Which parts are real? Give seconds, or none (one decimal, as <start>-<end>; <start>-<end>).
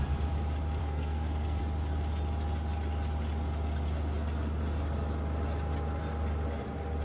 0.0-0.8; 1.6-7.0